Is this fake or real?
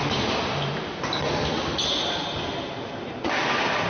real